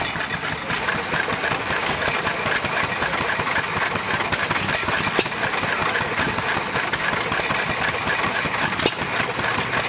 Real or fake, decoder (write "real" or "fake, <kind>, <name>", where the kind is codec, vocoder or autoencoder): real